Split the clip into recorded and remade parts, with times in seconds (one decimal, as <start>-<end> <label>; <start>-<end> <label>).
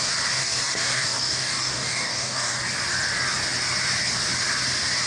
0.0-0.4 recorded; 0.4-2.6 remade; 2.6-5.1 recorded